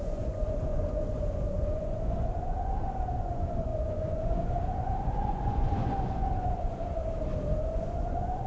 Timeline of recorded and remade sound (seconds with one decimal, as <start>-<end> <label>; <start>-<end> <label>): 0.0-7.0 remade; 7.0-7.7 recorded; 7.7-8.5 remade